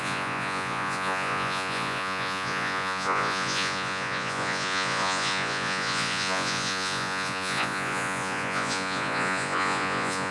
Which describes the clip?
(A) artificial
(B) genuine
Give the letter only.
A